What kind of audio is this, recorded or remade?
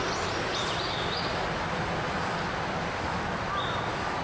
recorded